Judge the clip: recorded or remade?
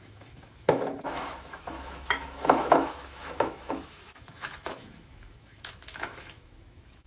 remade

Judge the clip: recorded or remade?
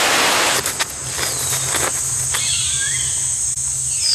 recorded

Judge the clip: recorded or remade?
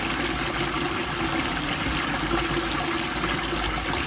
recorded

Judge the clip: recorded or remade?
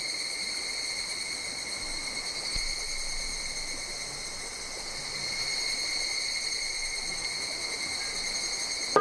recorded